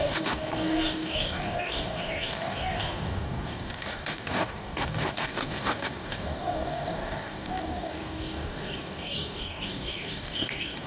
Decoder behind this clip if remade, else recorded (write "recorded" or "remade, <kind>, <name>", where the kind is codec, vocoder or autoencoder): remade, codec, DAC